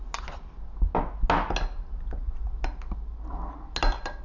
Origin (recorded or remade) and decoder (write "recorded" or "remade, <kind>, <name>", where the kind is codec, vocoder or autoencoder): recorded